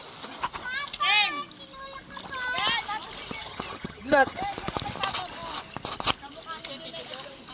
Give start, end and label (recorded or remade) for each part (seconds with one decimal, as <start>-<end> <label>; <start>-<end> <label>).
0.0-3.4 recorded; 3.4-4.4 remade; 4.4-7.5 recorded